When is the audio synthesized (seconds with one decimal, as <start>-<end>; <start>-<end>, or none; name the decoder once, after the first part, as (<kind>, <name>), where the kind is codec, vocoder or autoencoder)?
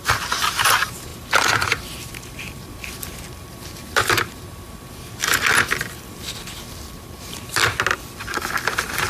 0.0-5.2 (vocoder, BigVGAN v2); 6.1-7.6; 8.7-9.1